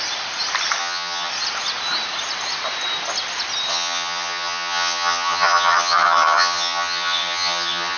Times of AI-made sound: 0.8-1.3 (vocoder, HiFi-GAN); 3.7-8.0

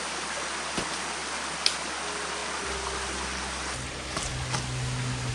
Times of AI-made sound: none